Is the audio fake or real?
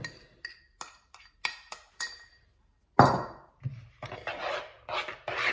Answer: real